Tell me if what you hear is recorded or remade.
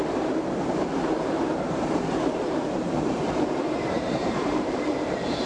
remade